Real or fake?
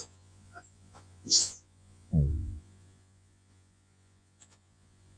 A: fake